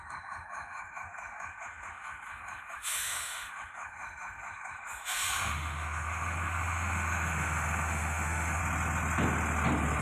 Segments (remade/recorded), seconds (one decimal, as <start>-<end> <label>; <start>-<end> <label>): 0.0-8.6 remade; 8.6-10.0 recorded